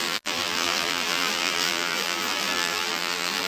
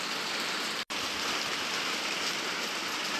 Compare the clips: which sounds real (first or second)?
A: second